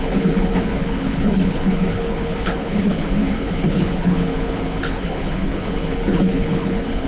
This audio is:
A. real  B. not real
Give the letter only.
B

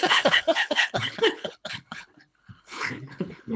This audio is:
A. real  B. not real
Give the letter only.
B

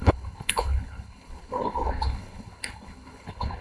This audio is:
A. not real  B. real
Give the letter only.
A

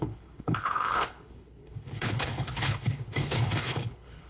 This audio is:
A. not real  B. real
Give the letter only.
A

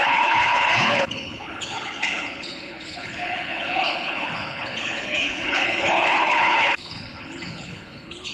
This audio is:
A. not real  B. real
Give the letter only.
A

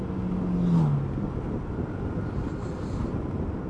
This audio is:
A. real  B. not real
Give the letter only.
A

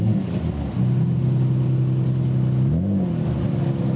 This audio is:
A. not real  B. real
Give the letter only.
B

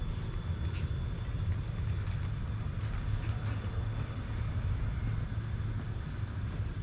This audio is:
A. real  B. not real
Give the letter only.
A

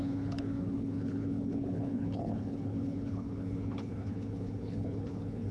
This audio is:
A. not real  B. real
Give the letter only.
A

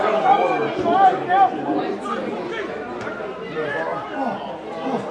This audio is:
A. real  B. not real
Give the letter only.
A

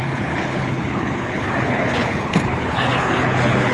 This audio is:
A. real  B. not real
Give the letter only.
B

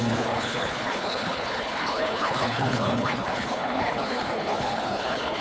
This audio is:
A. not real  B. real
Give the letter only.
A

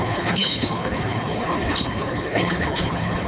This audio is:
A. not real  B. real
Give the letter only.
A